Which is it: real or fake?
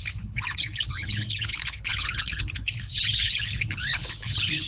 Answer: fake